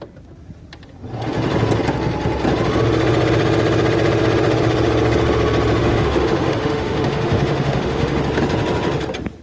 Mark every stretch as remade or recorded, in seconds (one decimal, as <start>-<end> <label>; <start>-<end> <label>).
0.0-5.8 recorded; 5.8-8.2 remade; 8.2-9.4 recorded

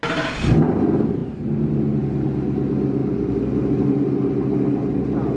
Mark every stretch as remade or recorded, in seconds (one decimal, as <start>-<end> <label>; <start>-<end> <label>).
0.0-5.4 recorded

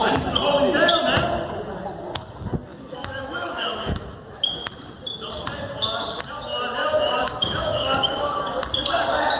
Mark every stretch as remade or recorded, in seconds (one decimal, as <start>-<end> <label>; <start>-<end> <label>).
0.0-2.7 recorded; 2.7-5.0 remade; 5.0-6.8 recorded; 6.8-8.4 remade; 8.4-9.4 recorded